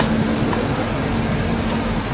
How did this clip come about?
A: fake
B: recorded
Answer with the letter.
B